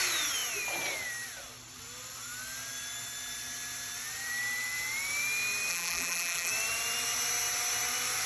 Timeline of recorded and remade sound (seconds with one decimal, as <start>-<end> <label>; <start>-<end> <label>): 0.0-5.7 recorded; 5.7-6.5 remade; 6.5-8.3 recorded